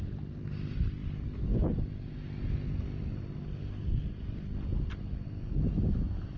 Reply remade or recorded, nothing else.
recorded